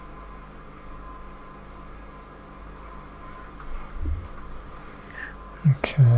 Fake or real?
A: real